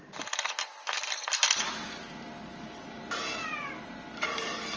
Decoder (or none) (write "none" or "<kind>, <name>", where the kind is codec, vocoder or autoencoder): none